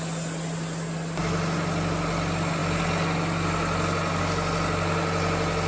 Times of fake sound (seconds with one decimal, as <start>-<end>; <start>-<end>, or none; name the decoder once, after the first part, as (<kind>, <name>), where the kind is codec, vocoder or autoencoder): none